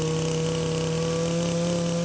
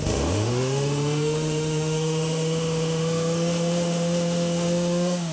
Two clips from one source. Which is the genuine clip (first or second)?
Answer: first